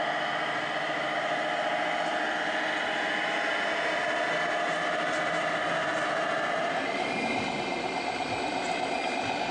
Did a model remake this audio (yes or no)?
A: no